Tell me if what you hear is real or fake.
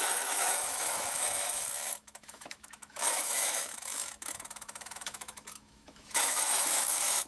fake